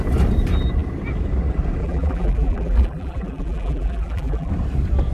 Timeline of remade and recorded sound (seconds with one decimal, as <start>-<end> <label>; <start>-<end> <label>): 0.0-1.8 recorded; 1.8-4.5 remade; 4.5-5.1 recorded